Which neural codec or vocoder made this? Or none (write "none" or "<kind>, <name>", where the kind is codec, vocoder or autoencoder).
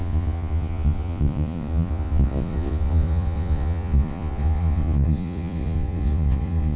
vocoder, Vocos